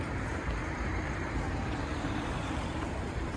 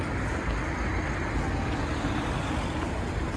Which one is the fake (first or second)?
first